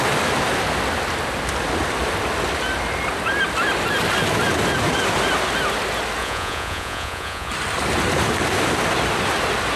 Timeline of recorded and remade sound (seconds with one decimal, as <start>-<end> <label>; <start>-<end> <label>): 0.0-6.2 recorded; 6.2-7.5 remade; 7.5-9.8 recorded